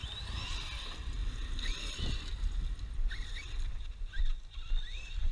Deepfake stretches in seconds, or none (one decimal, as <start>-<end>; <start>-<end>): none